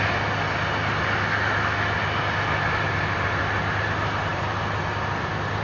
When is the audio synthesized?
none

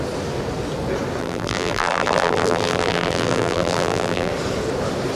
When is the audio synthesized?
1.2-4.3 (vocoder, BigVGAN v2)

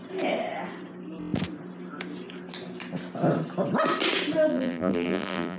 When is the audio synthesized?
4.5-5.6 (vocoder, BigVGAN v2)

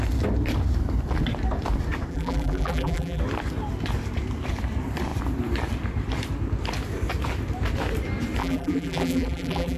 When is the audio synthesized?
2.1-3.2 (vocoder, BigVGAN v2); 8.4-9.8

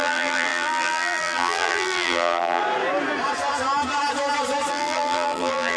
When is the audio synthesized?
0.0-2.6 (vocoder, BigVGAN v2); 4.7-5.8

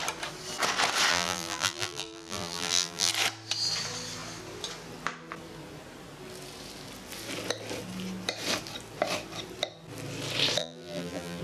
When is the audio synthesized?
1.1-3.1 (vocoder, BigVGAN v2); 10.6-11.4

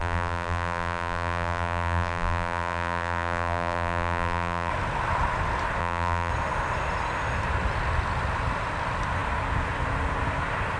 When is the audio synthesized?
0.0-4.7 (vocoder, BigVGAN v2); 5.8-6.3